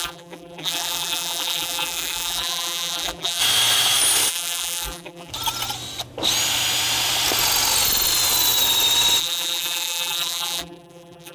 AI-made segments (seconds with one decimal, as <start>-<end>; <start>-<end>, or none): 0.0-3.4; 4.3-5.3; 9.2-11.3